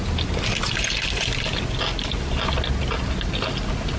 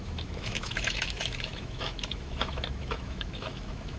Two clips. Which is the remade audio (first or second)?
second